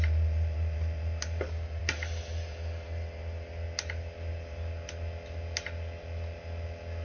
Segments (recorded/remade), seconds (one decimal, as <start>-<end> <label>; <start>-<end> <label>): 0.0-7.0 recorded